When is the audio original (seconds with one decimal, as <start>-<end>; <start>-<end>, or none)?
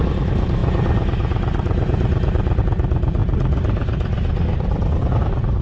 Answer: 0.0-5.6